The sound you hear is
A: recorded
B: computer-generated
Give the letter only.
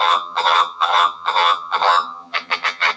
B